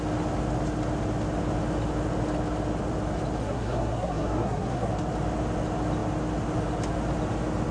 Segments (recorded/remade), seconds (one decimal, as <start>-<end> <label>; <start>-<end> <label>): 0.0-3.4 recorded; 3.4-4.9 remade; 4.9-7.7 recorded